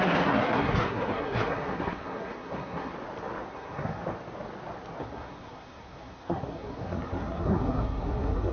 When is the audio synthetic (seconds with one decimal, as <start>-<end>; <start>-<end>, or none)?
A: 0.0-2.9; 3.5-4.0; 5.0-8.5